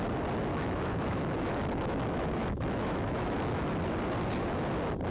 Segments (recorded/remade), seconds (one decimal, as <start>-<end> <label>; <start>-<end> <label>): 0.0-0.5 recorded; 0.5-3.6 remade; 3.6-5.1 recorded